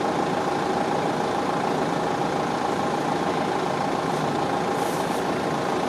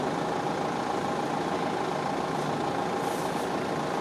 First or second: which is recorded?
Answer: second